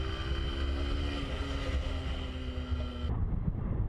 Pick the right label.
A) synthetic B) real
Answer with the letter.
B